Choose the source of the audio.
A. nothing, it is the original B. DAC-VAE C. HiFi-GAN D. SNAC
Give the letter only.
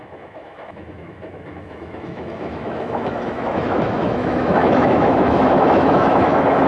B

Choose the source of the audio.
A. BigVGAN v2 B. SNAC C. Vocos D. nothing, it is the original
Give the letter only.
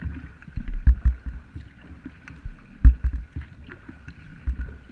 D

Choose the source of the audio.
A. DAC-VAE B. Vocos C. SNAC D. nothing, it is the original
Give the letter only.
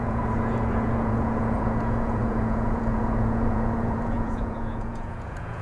B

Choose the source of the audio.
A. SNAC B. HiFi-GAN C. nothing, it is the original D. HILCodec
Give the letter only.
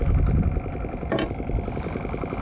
C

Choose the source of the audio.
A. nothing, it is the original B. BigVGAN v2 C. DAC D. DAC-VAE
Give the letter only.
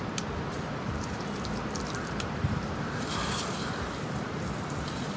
B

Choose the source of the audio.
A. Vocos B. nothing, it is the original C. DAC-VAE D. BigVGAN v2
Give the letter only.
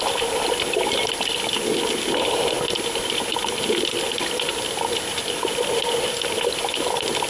B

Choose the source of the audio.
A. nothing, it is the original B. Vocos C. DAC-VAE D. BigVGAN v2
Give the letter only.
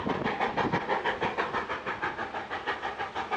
A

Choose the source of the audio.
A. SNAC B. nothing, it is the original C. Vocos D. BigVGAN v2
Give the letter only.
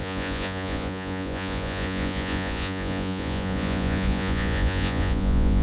C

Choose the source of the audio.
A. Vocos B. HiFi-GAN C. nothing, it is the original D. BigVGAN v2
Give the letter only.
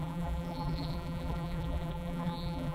D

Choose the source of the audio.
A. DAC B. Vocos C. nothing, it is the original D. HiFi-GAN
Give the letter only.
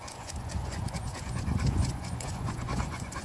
B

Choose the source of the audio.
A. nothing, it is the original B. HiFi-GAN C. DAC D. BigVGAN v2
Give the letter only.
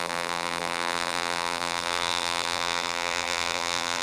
D